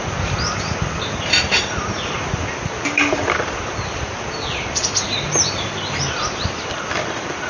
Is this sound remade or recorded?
remade